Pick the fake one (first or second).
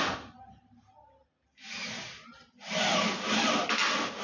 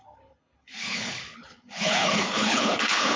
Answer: second